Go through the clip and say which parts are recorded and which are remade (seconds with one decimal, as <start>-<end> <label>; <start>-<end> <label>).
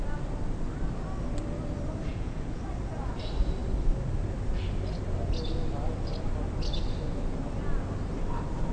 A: 0.0-2.1 recorded; 2.1-2.6 remade; 2.6-8.7 recorded